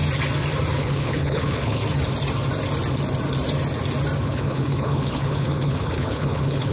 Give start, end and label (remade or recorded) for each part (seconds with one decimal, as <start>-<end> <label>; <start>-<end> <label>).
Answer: 0.0-0.8 recorded; 0.8-1.8 remade; 1.8-4.2 recorded; 4.2-6.7 remade